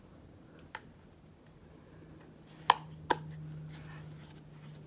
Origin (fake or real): real